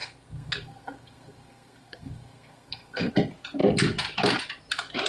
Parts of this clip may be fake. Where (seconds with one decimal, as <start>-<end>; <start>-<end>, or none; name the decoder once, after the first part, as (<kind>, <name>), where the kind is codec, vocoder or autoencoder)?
0.0-3.1 (codec, SNAC)